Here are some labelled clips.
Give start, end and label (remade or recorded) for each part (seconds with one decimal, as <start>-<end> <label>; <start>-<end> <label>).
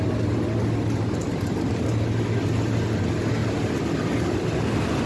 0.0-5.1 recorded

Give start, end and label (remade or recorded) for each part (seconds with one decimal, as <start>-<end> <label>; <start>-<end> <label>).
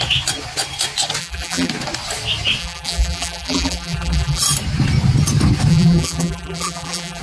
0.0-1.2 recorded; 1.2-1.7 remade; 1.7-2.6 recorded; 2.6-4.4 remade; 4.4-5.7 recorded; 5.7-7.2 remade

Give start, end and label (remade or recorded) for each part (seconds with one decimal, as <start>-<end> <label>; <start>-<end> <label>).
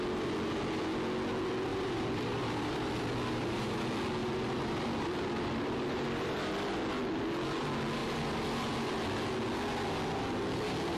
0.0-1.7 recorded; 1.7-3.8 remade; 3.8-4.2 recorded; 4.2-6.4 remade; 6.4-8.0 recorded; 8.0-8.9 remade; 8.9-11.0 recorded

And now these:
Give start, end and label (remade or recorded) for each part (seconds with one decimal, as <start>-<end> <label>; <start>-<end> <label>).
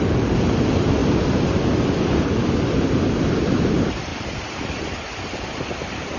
0.0-4.1 remade; 4.1-4.9 recorded; 4.9-6.2 remade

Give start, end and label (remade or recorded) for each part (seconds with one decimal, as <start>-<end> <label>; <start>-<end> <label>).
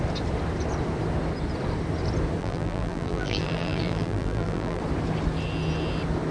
0.0-2.4 recorded; 2.4-4.8 remade; 4.8-6.3 recorded